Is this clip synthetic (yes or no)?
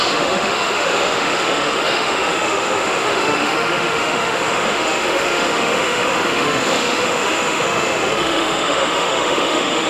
yes